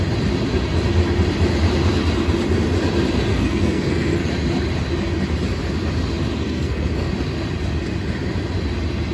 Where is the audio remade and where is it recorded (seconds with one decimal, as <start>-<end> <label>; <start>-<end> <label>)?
0.0-3.3 recorded; 3.3-4.3 remade; 4.3-6.4 recorded; 6.4-7.1 remade; 7.1-9.1 recorded